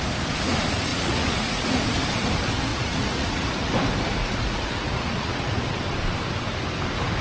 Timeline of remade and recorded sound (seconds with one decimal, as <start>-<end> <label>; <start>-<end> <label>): 0.0-0.9 recorded; 0.9-1.8 remade; 1.8-2.7 recorded; 2.7-3.7 remade; 3.7-4.2 recorded; 4.2-5.7 remade; 5.7-7.2 recorded